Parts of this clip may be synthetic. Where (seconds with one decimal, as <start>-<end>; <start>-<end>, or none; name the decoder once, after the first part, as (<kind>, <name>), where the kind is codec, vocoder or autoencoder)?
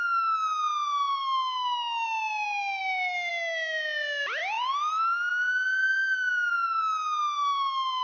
none